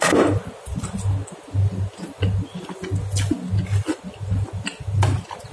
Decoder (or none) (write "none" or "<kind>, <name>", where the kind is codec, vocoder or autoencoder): none